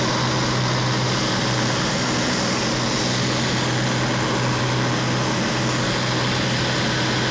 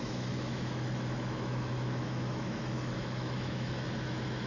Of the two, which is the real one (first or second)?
first